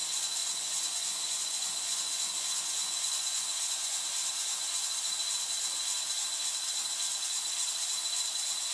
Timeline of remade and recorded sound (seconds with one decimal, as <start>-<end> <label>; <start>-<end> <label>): 0.0-0.4 recorded; 0.4-4.0 remade; 4.0-4.4 recorded; 4.4-5.0 remade; 5.0-8.7 recorded